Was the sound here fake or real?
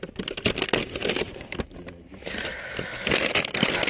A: real